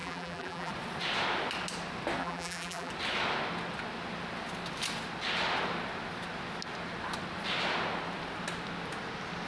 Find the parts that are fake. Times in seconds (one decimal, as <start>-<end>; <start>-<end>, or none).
0.0-0.7; 2.2-2.9

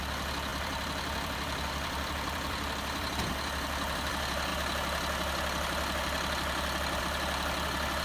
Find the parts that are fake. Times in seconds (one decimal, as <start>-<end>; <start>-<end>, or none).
0.5-4.1

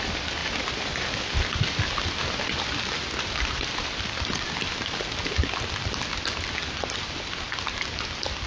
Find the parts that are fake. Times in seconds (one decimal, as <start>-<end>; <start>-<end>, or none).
0.4-4.3

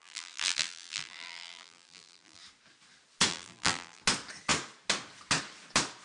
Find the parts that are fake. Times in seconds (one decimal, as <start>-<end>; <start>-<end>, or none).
0.0-2.4; 3.3-4.0

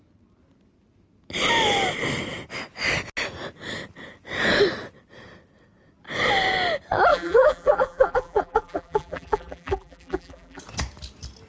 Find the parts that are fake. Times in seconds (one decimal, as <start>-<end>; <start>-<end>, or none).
7.1-10.6